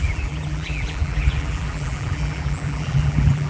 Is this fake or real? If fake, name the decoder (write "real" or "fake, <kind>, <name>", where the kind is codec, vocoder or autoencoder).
fake, vocoder, BigVGAN v2